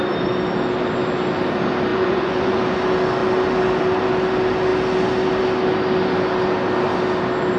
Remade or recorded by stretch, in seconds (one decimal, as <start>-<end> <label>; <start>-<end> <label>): 0.0-1.9 recorded; 1.9-2.6 remade; 2.6-7.6 recorded